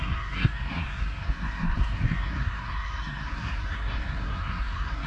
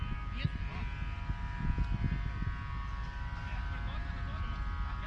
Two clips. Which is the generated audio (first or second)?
first